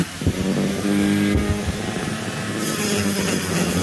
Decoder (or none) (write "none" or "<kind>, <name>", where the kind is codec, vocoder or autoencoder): none